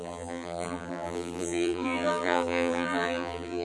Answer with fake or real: fake